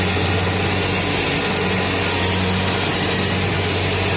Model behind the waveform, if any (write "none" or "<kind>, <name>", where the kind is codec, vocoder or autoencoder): none